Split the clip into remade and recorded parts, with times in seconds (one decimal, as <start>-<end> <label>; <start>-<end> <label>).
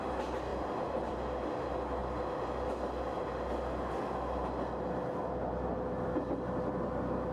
0.0-0.5 recorded; 0.5-1.1 remade; 1.1-7.3 recorded